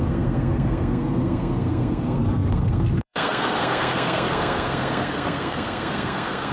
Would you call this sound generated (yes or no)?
yes